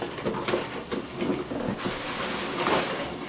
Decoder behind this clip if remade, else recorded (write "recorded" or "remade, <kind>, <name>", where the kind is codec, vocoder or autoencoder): recorded